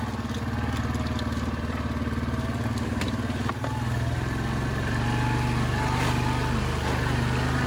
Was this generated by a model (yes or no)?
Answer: no